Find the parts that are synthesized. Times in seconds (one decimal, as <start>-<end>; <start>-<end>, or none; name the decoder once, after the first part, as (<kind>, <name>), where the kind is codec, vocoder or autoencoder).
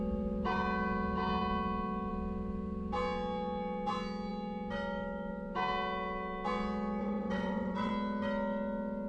7.0-7.9 (vocoder, WaveNeXt)